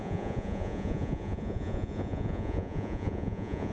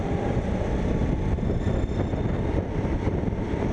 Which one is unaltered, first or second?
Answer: second